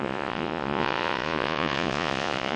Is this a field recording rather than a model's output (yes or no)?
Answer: no